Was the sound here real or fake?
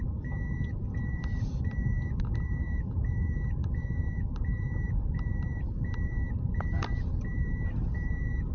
fake